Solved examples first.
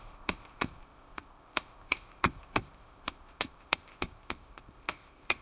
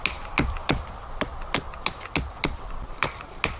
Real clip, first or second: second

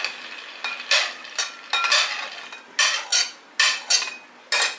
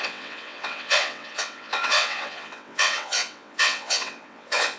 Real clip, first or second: first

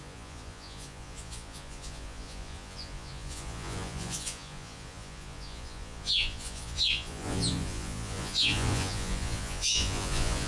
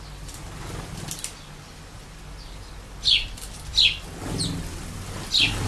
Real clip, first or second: second